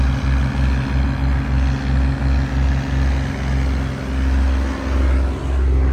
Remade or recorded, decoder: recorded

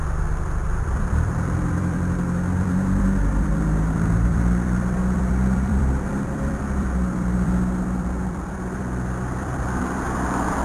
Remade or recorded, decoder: remade, vocoder, BigVGAN v2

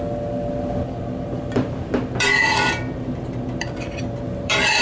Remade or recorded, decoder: remade, vocoder, BigVGAN v2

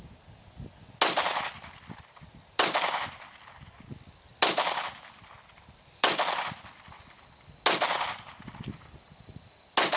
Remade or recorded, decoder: recorded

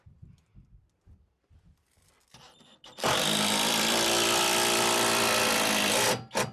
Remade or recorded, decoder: remade, vocoder, BigVGAN v2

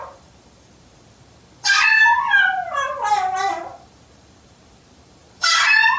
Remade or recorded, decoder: remade, vocoder, BigVGAN v2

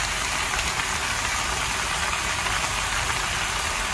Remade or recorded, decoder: recorded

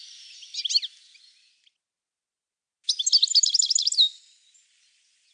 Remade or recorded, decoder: recorded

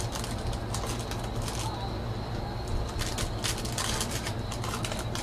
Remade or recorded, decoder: recorded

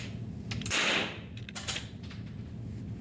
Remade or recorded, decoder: recorded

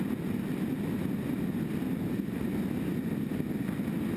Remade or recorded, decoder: recorded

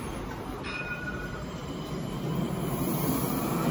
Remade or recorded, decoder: remade, vocoder, BigVGAN v2